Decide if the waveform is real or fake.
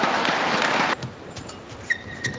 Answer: real